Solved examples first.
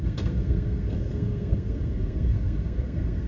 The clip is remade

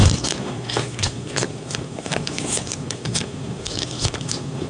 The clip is remade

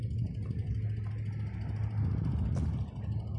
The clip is recorded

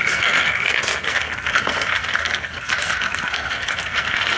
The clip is remade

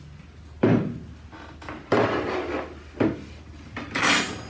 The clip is recorded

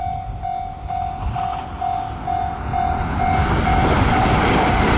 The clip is recorded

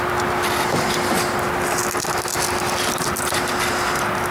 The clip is recorded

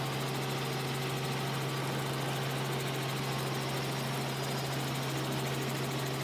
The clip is recorded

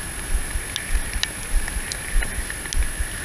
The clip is recorded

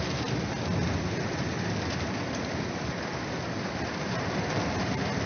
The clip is recorded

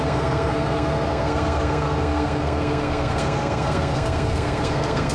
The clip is remade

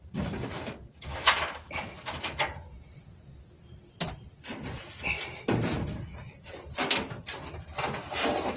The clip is recorded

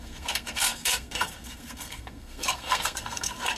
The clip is remade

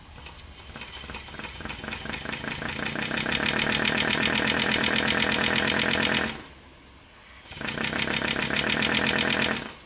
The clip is recorded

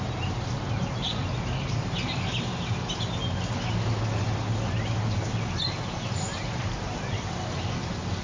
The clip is recorded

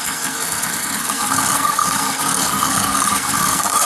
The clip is remade